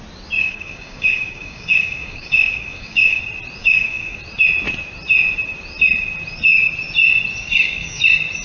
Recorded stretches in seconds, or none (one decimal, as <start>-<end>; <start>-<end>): 0.0-0.4; 3.2-3.6; 4.2-7.4; 8.0-8.4